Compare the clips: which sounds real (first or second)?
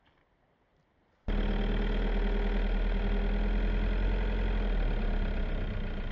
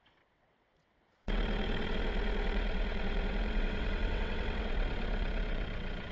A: first